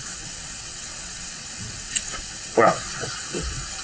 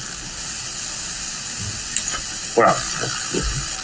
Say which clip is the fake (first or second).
first